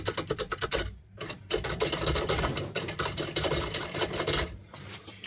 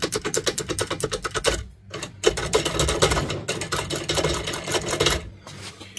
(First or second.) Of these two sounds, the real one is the second